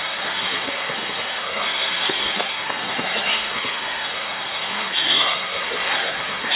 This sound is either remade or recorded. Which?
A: remade